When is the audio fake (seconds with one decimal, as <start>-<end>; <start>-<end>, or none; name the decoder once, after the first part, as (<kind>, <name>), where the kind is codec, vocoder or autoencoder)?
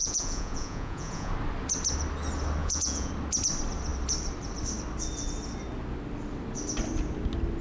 0.0-1.3 (vocoder, Vocos); 2.6-3.1